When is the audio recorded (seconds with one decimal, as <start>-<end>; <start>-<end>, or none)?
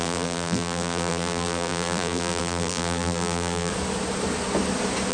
3.7-5.1